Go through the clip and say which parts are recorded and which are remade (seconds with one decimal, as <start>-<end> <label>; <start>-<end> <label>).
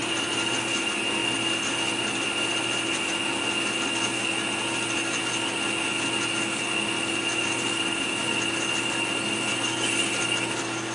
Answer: 0.0-10.9 recorded